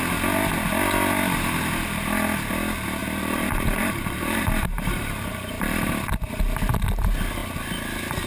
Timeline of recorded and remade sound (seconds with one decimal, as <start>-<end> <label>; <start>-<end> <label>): 0.0-3.0 recorded; 3.0-6.4 remade; 6.4-8.3 recorded